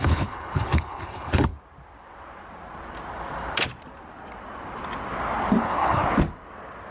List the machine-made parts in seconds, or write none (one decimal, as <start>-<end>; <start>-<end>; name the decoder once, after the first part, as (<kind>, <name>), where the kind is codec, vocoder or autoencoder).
0.0-1.5 (codec, HILCodec); 5.6-6.0